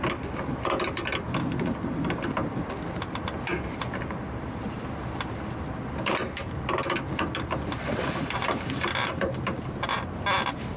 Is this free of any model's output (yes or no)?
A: yes